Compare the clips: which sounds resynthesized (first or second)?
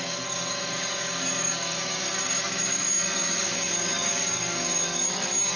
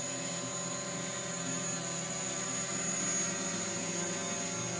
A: first